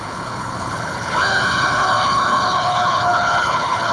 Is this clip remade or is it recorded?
remade